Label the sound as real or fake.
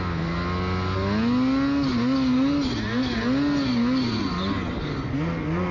real